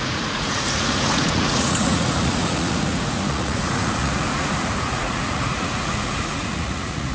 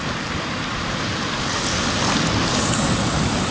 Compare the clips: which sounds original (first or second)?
second